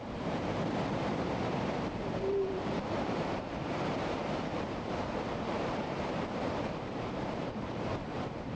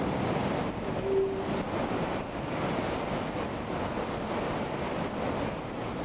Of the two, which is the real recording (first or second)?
second